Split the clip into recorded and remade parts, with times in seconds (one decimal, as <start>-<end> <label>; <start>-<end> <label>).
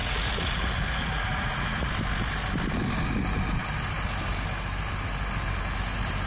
0.0-1.9 remade; 1.9-6.3 recorded